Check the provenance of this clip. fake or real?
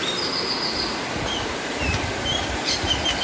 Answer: real